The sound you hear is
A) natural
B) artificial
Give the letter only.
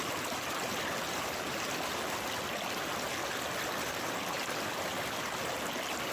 A